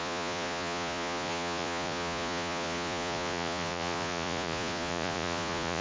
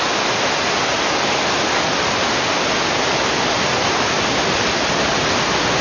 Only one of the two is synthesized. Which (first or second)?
first